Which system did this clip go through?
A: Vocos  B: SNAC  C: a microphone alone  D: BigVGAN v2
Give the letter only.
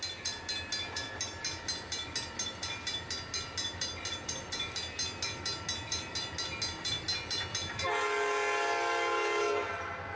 C